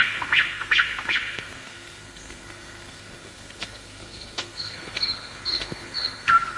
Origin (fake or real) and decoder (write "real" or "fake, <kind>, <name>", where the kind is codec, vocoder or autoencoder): fake, codec, SNAC